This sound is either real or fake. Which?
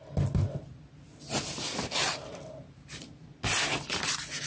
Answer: real